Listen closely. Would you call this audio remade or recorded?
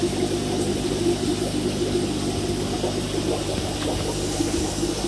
recorded